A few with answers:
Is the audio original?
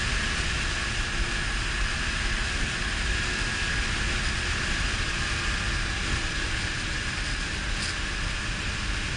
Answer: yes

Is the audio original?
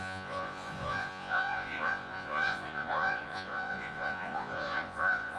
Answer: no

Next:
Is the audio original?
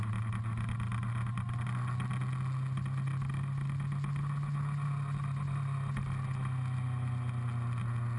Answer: yes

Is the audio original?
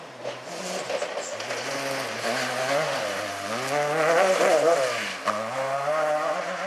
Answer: yes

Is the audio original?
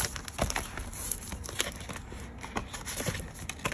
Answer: yes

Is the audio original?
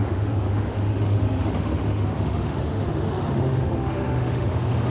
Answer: no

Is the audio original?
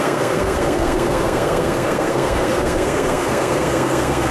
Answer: no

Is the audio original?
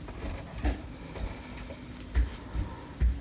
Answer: yes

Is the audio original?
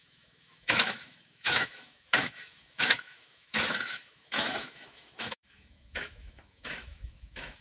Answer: no